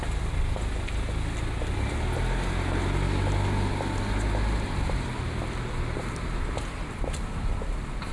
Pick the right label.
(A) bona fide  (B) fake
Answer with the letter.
A